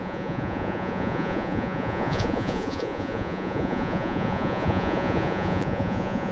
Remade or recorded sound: remade